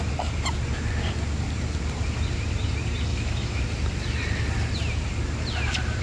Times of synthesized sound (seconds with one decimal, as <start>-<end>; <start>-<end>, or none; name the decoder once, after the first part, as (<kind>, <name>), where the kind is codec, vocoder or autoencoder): 3.1-3.6 (autoencoder, DAC-VAE)